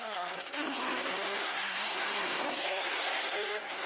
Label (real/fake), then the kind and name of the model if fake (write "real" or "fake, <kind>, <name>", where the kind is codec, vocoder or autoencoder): fake, codec, SNAC